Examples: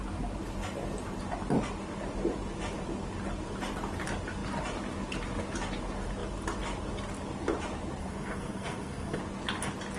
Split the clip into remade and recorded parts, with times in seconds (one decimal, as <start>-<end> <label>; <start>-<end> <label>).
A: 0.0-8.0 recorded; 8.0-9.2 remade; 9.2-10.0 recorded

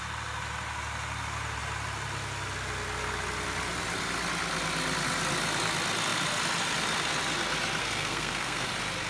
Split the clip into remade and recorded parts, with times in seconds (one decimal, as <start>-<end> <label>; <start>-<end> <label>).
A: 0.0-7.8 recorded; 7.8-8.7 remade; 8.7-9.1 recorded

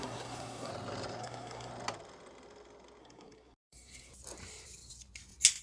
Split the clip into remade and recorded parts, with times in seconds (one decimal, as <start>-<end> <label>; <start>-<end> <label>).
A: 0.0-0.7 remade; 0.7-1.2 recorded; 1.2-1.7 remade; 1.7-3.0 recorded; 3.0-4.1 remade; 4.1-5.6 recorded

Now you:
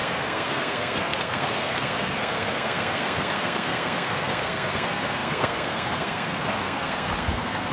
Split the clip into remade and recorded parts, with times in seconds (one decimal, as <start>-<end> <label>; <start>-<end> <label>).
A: 0.0-7.7 remade